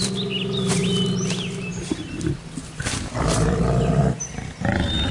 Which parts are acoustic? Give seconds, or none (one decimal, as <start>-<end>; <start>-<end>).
0.0-0.8; 3.9-5.1